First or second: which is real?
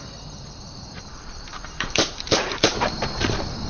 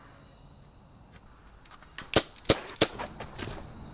second